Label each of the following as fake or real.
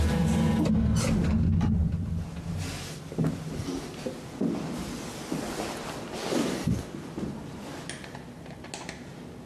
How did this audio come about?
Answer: real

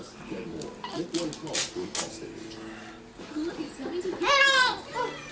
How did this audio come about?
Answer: real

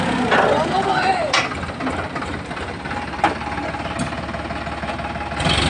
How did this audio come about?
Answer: real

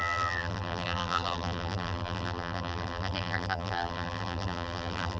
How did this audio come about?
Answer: fake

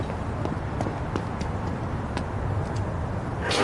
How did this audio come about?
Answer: real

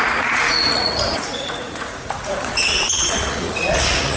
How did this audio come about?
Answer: fake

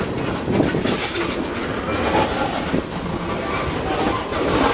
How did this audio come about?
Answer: real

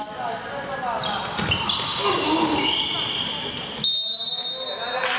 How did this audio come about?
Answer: real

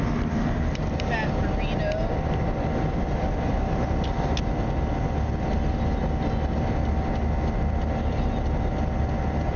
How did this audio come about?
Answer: real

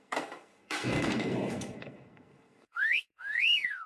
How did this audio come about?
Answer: fake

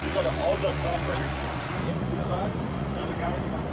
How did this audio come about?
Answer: fake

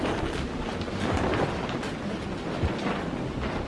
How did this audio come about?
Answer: real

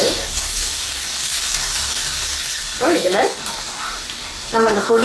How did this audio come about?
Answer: fake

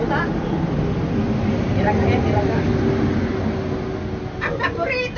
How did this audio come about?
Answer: real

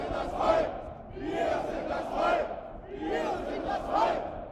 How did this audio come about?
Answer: real